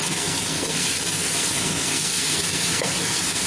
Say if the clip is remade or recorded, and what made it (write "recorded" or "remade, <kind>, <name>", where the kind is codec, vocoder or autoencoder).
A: remade, codec, SNAC